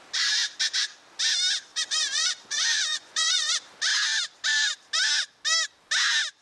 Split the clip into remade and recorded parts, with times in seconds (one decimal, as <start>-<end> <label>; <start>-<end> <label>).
0.0-1.7 recorded; 1.7-3.5 remade; 3.5-6.4 recorded